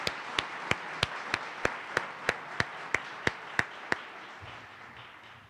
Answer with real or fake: real